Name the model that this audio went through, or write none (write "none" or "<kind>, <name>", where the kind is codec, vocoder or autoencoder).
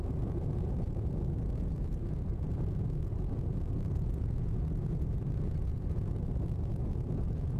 vocoder, Vocos